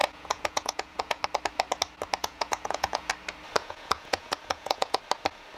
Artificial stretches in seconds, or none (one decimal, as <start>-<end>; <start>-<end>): 0.0-1.2; 2.2-3.1; 3.6-5.0